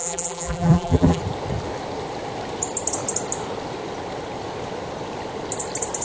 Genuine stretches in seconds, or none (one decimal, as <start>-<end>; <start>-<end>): 1.2-6.0